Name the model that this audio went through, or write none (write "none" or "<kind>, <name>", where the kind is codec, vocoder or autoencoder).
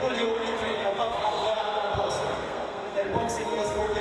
codec, SNAC